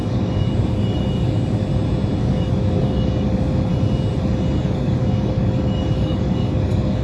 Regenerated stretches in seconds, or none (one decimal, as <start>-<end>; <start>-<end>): 0.0-1.7; 2.2-3.7; 4.6-7.0